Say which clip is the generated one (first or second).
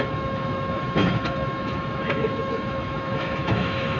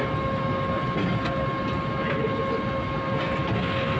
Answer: first